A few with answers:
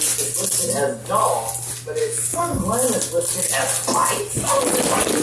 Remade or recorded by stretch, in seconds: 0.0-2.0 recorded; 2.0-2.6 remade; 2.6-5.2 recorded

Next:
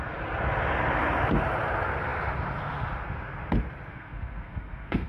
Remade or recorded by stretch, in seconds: 0.0-3.9 recorded; 3.9-5.1 remade

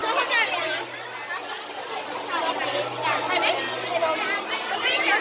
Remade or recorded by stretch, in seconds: 0.0-5.2 recorded

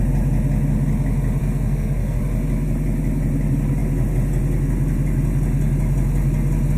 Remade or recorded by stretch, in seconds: 0.0-1.4 recorded; 1.4-2.2 remade; 2.2-6.8 recorded

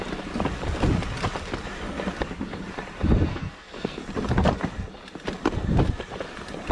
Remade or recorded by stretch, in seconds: 0.0-3.3 recorded; 3.3-4.0 remade; 4.0-6.7 recorded

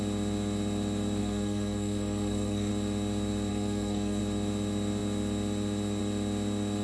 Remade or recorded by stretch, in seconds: 0.0-1.2 recorded; 1.2-2.7 remade; 2.7-3.5 recorded; 3.5-4.2 remade; 4.2-6.8 recorded